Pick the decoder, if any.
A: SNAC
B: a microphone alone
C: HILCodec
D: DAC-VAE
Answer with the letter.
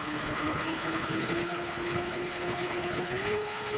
C